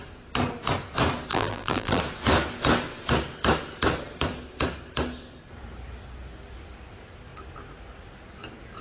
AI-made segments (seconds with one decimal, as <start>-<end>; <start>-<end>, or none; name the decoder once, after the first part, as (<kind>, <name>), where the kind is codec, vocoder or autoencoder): 1.3-2.0 (vocoder, BigVGAN v2)